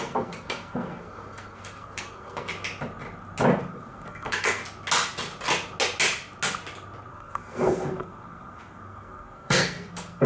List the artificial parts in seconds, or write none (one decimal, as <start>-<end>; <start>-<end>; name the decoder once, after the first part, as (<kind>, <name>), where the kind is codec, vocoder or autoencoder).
0.0-2.5 (codec, SNAC); 3.7-4.6; 7.1-10.3